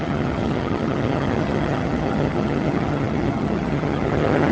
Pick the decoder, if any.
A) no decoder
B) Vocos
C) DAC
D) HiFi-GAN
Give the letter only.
D